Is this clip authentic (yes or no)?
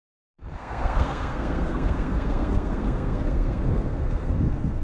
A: no